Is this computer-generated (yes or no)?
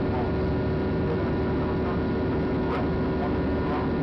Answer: no